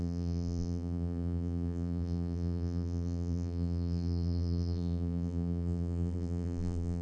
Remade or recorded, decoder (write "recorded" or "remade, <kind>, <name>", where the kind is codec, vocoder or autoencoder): remade, vocoder, BigVGAN v2